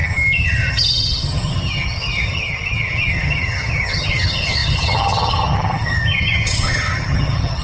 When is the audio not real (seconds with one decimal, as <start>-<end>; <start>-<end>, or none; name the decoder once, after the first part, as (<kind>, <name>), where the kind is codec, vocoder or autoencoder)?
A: 0.0-7.6 (vocoder, HiFi-GAN)